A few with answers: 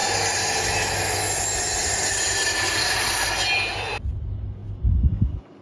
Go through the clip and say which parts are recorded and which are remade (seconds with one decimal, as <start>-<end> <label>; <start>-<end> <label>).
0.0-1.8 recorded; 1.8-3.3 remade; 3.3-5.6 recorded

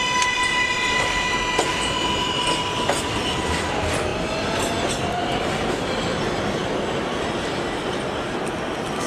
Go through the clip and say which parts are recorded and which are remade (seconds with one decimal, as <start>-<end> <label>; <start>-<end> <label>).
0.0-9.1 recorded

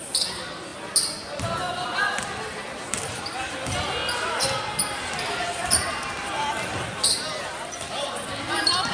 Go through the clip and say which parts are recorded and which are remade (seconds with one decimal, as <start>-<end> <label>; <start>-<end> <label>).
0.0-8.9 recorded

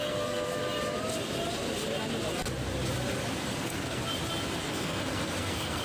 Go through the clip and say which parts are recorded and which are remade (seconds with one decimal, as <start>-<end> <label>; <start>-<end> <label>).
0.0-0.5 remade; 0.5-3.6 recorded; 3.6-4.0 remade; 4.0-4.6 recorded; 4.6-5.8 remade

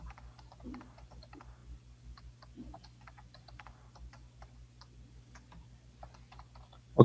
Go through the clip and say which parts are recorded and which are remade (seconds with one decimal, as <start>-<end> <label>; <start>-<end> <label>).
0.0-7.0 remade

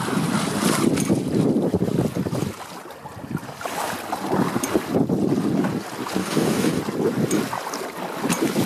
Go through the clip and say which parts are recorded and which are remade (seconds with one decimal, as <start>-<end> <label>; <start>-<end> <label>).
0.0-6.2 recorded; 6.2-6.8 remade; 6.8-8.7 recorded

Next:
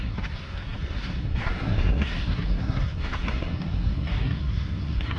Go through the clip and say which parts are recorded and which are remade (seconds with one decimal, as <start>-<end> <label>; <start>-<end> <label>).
0.0-5.2 remade

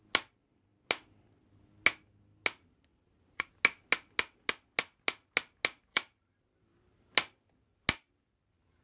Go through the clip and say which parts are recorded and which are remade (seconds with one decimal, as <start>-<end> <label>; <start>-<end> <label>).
0.0-2.9 recorded; 2.9-3.5 remade; 3.5-5.9 recorded; 5.9-6.5 remade; 6.5-8.8 recorded